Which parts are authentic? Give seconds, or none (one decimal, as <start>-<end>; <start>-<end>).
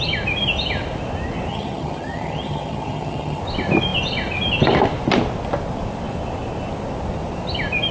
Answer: 0.0-1.5; 3.4-7.9